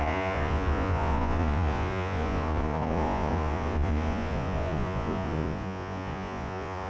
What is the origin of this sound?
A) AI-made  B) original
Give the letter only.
A